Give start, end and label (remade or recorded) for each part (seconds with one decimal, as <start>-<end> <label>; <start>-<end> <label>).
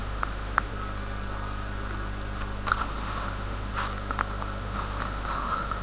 0.0-0.7 remade; 0.7-2.8 recorded; 2.8-3.7 remade; 3.7-4.6 recorded; 4.6-5.8 remade